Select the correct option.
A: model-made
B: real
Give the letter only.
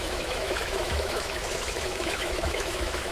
A